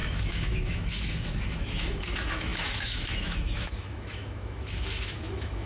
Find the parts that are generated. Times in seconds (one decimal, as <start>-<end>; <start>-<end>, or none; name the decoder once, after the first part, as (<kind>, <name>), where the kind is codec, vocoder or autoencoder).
0.0-5.7 (autoencoder, DAC-VAE)